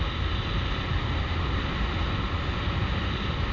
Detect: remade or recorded recorded